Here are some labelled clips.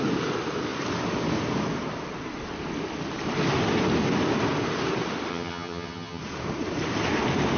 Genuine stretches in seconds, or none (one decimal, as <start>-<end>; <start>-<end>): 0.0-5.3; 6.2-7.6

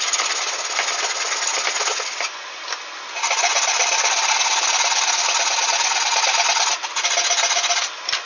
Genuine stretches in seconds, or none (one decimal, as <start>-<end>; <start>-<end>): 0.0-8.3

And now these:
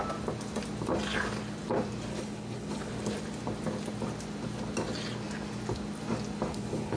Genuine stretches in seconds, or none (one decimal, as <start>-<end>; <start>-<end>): 0.0-2.1; 2.9-6.5

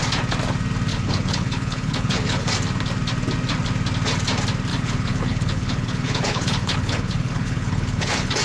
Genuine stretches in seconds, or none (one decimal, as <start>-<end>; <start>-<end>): 0.0-0.9; 2.5-4.7

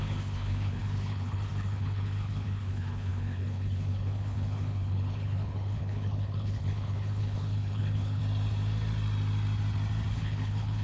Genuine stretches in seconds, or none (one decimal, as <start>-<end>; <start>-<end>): 8.2-10.1

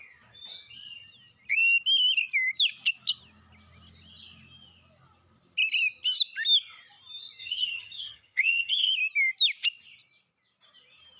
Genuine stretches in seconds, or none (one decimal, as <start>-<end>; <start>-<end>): 0.0-7.4; 8.9-11.2

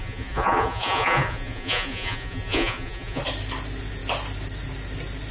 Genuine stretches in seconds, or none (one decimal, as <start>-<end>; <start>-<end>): 3.2-5.3

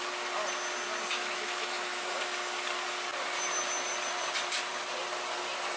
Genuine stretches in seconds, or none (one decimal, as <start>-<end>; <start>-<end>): 0.0-1.2; 2.1-5.8